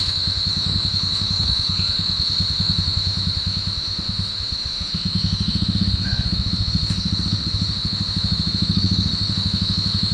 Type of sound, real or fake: fake